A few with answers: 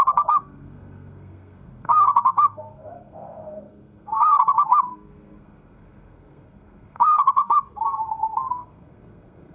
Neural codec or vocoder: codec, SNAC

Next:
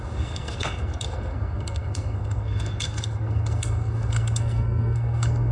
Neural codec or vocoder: codec, SNAC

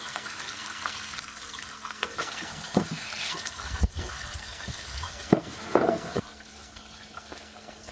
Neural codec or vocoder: codec, SNAC